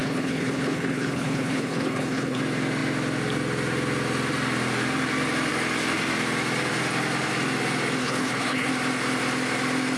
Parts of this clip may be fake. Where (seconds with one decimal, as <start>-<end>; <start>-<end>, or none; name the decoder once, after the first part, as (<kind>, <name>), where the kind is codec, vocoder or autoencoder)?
0.0-2.4 (codec, HILCodec); 8.0-8.7